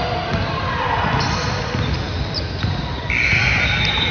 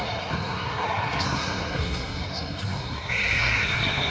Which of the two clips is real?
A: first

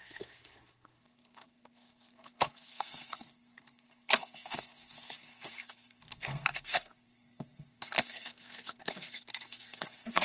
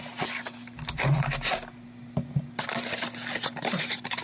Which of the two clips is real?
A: second